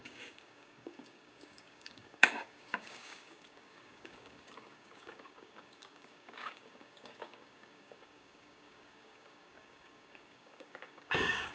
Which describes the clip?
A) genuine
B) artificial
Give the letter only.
B